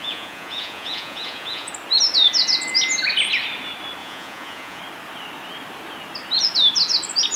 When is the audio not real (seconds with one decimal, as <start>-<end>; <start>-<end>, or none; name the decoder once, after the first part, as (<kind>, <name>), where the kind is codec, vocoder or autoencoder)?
0.0-1.7 (vocoder, Vocos); 4.0-4.8

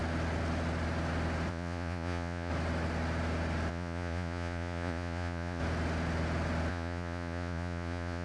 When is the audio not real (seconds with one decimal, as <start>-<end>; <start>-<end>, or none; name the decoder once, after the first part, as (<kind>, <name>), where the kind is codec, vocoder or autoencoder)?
1.5-2.5 (vocoder, Vocos); 3.7-5.6; 6.7-8.2

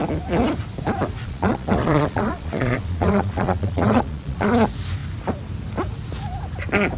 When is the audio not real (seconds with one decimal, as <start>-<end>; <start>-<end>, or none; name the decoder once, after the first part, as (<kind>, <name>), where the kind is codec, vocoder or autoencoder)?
1.2-4.5 (vocoder, Vocos)

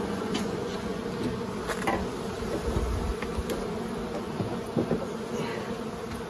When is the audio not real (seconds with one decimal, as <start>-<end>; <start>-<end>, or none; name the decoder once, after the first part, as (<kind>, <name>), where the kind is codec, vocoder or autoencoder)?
0.0-1.0 (vocoder, Vocos); 4.2-4.7

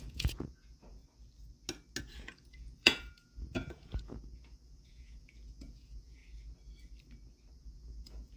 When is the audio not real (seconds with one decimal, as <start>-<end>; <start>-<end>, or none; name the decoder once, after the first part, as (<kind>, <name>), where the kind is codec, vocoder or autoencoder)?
0.0-1.0 (vocoder, Vocos); 2.0-6.2; 7.5-8.4

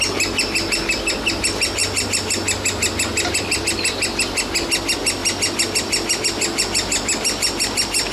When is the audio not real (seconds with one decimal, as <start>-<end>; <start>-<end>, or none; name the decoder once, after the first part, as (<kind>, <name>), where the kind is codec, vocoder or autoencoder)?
none

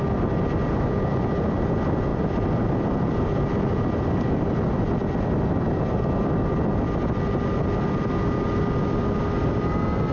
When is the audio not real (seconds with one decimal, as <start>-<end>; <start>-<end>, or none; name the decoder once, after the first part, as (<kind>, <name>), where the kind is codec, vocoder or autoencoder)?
none

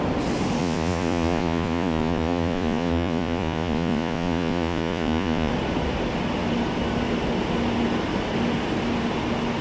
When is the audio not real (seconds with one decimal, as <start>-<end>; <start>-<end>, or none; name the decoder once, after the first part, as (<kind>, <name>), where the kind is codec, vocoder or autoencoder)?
0.6-5.5 (vocoder, Vocos)